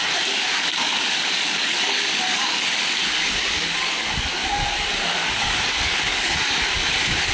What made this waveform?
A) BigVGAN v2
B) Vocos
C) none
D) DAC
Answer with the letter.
D